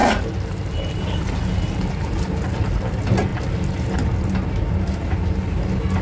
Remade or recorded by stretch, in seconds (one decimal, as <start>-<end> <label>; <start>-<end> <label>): 0.0-6.0 recorded